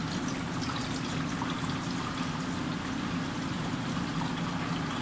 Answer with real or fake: fake